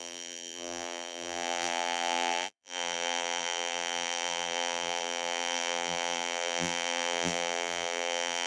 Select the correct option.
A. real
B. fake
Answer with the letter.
B